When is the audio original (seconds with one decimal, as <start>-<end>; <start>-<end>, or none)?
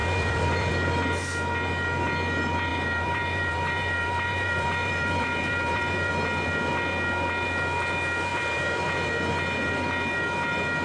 0.7-2.7; 6.1-8.3; 9.1-10.8